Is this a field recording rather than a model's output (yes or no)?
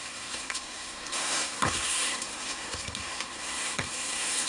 no